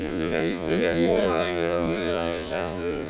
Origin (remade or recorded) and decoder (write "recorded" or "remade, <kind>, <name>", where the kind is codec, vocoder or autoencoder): remade, vocoder, Vocos